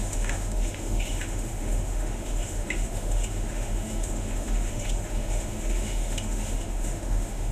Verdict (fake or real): fake